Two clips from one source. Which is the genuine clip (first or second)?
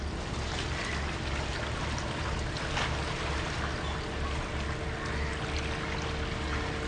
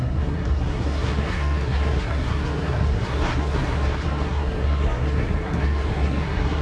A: first